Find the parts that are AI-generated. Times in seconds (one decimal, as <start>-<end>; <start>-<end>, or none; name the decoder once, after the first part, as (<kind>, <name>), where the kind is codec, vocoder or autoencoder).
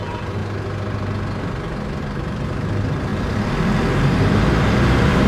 0.0-0.4 (vocoder, BigVGAN v2); 2.0-5.3